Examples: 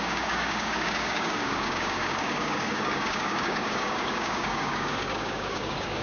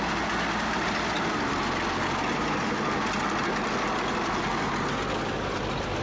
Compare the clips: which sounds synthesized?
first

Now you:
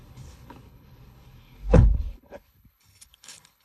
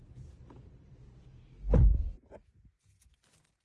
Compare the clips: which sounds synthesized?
first